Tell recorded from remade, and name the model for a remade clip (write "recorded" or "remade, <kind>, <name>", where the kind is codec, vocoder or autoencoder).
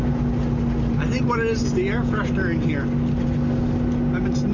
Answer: recorded